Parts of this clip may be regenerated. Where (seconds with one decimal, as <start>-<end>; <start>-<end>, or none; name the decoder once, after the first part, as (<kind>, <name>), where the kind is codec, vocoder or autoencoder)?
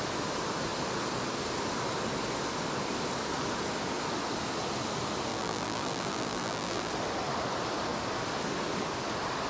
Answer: 5.3-6.9 (vocoder, BigVGAN v2)